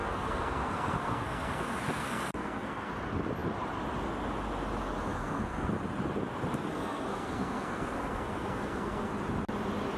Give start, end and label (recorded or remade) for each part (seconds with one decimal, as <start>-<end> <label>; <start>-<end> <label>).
0.0-2.9 remade; 2.9-5.1 recorded; 5.1-5.7 remade; 5.7-6.7 recorded; 6.7-9.1 remade; 9.1-10.0 recorded